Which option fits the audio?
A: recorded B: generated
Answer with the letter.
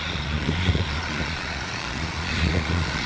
B